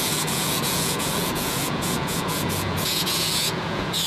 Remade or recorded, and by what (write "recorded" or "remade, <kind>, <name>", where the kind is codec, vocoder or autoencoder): remade, vocoder, Vocos